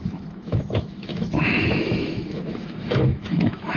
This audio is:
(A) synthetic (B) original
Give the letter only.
A